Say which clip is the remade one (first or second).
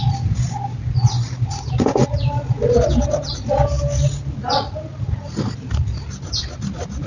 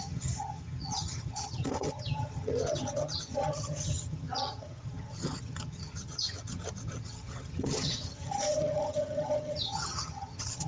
second